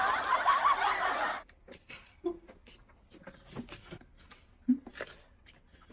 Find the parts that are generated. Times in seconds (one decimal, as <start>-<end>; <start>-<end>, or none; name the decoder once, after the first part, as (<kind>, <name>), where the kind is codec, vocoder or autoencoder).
0.0-3.5 (vocoder, BigVGAN v2); 4.9-5.5